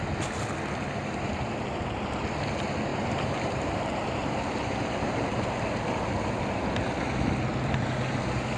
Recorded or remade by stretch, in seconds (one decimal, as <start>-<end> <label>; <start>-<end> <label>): 0.0-2.9 recorded; 2.9-4.9 remade; 4.9-8.6 recorded